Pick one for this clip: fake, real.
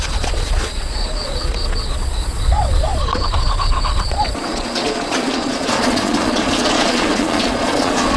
fake